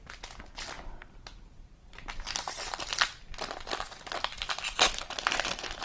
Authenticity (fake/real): real